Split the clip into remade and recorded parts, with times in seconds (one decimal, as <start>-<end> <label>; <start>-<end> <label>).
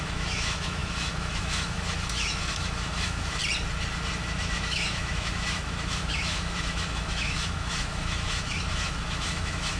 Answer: 0.0-3.4 remade; 3.4-4.2 recorded; 4.2-9.8 remade